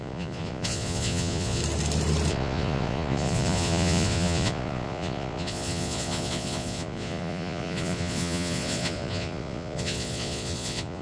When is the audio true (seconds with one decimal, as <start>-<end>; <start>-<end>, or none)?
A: 1.6-2.3